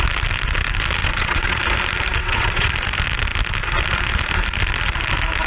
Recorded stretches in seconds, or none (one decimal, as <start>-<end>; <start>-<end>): 0.0-1.0; 1.6-2.2; 2.7-5.5